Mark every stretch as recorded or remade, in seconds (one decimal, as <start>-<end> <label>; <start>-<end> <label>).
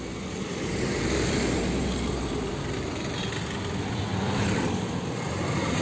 0.0-4.1 recorded; 4.1-5.2 remade; 5.2-5.8 recorded